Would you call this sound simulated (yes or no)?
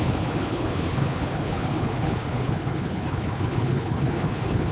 yes